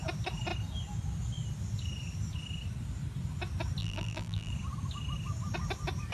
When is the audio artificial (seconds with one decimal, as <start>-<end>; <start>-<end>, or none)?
3.8-4.5